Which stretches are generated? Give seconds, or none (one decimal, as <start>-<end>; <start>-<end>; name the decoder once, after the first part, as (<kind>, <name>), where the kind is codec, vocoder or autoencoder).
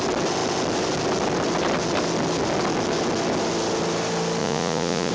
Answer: 4.4-5.1 (vocoder, Vocos)